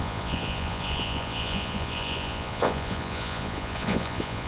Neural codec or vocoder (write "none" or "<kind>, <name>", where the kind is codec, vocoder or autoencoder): vocoder, Vocos